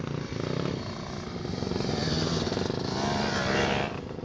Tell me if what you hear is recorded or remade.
recorded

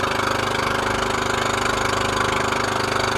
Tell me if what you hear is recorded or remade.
recorded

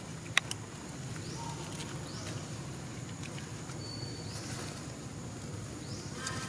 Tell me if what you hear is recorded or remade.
recorded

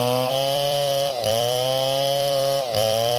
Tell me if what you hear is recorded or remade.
remade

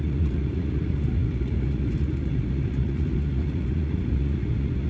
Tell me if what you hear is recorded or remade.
remade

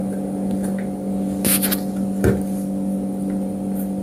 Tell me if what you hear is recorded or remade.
recorded